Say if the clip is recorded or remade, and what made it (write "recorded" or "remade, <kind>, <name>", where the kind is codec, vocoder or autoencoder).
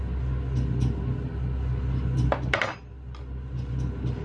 recorded